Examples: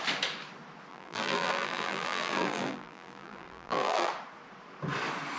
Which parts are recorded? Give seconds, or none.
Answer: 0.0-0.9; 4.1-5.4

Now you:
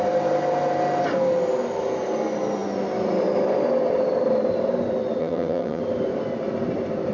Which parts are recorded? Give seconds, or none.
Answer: 0.0-5.2; 5.8-7.1

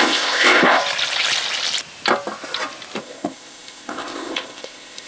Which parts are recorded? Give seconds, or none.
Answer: 0.8-3.0

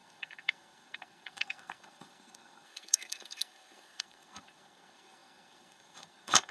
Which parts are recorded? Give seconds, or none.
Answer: none